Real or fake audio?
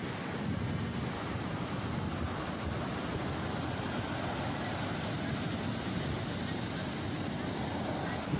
real